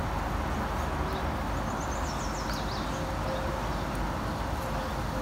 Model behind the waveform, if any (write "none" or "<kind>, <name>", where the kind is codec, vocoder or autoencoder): none